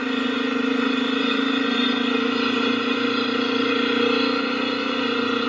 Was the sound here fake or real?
real